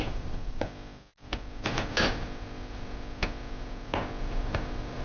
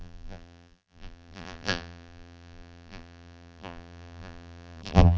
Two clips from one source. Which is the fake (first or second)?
second